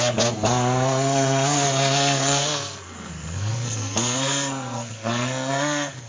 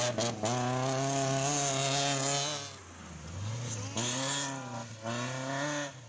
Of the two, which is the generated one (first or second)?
first